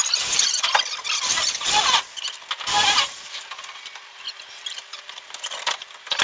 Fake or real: real